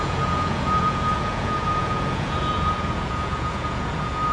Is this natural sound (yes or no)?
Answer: no